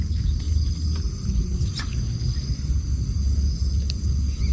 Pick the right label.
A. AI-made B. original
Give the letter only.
B